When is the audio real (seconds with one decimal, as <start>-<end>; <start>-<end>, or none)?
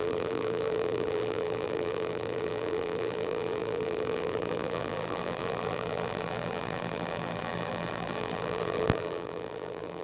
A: none